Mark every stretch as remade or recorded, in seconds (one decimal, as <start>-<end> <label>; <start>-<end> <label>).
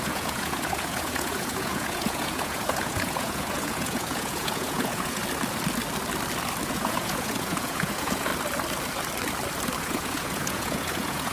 0.0-5.2 remade; 5.2-6.7 recorded; 6.7-8.3 remade; 8.3-9.8 recorded; 9.8-11.3 remade